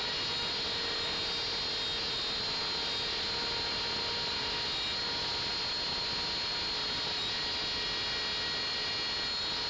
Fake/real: real